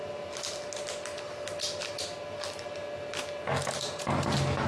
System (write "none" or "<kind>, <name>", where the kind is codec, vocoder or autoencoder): none